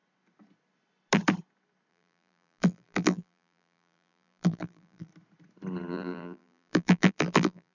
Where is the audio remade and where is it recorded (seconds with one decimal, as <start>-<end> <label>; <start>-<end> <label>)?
0.0-1.9 recorded; 1.9-5.1 remade; 5.1-5.9 recorded; 5.9-7.7 remade